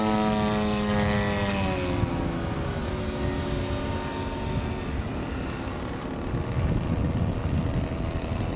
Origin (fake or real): real